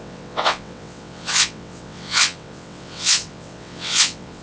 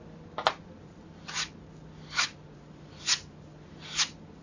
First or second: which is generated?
first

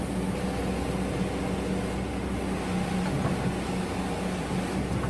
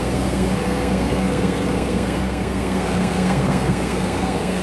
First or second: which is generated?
second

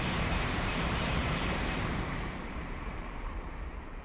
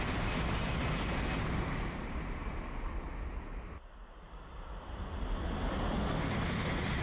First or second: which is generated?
first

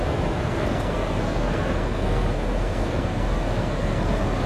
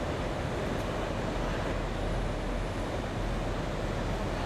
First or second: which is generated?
first